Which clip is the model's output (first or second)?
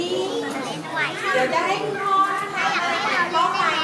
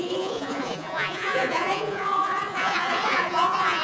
second